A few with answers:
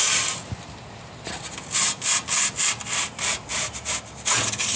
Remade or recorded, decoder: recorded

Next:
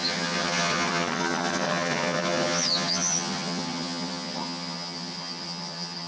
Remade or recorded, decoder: remade, vocoder, HiFi-GAN